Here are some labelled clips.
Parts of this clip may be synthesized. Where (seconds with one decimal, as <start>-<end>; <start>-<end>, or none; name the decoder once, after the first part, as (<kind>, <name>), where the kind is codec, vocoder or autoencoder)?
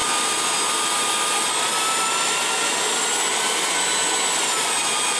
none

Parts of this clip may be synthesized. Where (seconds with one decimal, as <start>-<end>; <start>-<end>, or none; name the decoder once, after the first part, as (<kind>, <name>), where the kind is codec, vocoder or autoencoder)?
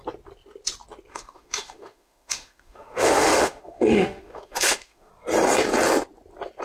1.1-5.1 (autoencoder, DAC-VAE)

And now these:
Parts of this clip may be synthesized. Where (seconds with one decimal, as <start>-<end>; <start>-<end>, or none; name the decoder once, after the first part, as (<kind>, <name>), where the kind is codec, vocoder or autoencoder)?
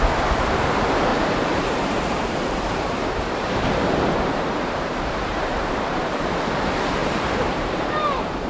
1.1-5.7 (vocoder, BigVGAN v2); 7.0-8.0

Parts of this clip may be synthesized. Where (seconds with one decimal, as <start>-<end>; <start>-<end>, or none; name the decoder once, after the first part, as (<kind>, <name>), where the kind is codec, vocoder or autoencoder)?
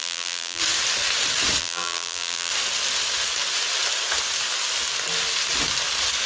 0.0-0.6 (vocoder, BigVGAN v2); 1.6-2.5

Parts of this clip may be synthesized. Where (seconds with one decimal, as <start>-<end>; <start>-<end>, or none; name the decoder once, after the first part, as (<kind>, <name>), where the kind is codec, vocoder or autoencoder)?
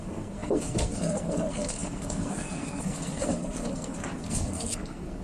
0.0-5.2 (codec, SNAC)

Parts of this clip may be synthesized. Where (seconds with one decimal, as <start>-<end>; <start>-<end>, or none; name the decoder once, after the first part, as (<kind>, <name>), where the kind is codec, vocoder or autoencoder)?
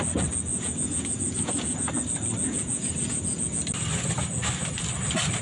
0.5-1.9 (vocoder, Vocos); 2.4-3.4